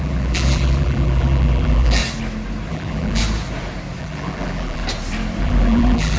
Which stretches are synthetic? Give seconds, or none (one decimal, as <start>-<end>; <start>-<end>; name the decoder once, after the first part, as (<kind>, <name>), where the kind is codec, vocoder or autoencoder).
0.0-2.0 (vocoder, BigVGAN v2); 2.7-3.2; 4.0-4.8; 5.4-6.2